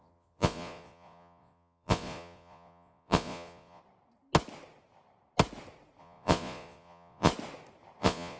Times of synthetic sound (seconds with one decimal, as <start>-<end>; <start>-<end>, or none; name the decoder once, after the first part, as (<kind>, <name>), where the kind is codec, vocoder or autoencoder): 0.0-3.8 (vocoder, Vocos); 6.0-7.3; 8.0-8.4